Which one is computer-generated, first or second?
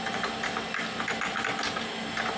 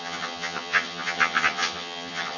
second